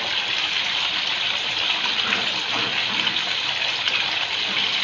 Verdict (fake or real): fake